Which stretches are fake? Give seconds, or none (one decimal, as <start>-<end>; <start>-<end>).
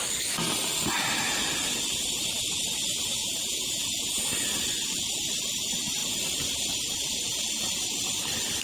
3.2-4.7